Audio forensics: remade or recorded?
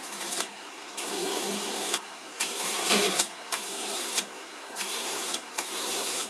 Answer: remade